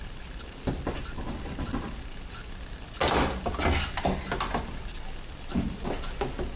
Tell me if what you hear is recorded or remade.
recorded